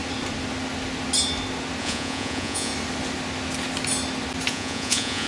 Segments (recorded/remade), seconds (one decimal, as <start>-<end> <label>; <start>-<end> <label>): 0.0-1.8 recorded; 1.8-2.7 remade; 2.7-4.5 recorded; 4.5-5.3 remade